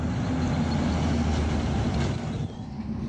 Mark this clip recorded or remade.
recorded